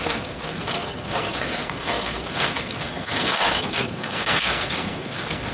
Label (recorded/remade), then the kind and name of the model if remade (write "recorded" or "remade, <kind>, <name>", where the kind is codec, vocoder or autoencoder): remade, codec, SNAC